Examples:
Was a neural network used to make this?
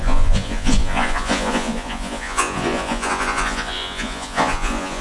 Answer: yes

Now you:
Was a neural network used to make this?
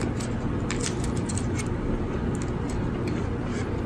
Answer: no